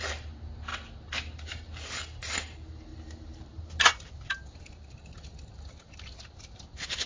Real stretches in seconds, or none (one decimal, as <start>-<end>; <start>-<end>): 0.0-7.1